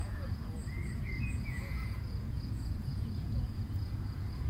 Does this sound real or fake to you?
fake